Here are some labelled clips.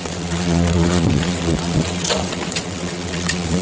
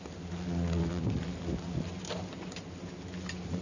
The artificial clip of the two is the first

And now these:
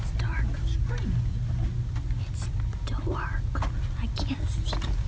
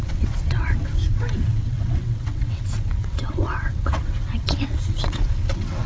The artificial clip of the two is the second